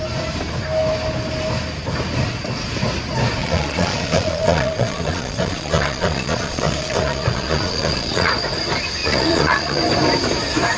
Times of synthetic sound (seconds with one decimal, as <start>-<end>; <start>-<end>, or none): 3.4-8.3; 9.0-9.8